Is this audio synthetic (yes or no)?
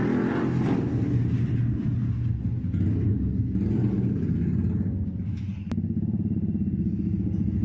no